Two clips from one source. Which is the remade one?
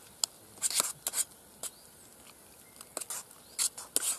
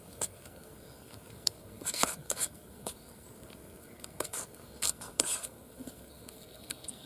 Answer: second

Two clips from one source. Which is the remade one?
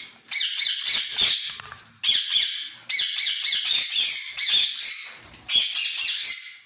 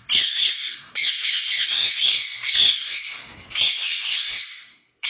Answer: second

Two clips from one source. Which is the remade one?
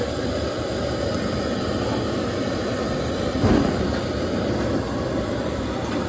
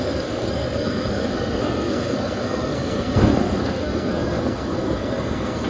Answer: second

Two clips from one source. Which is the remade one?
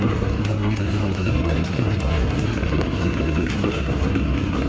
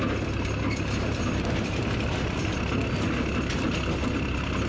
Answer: first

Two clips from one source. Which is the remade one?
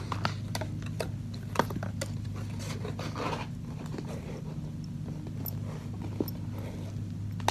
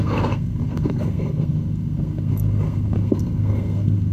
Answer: second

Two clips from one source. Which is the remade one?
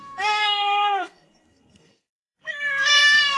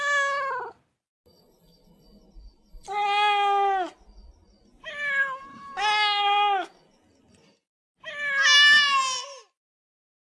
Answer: first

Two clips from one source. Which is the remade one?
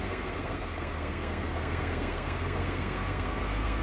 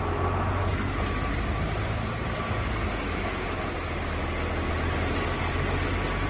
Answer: first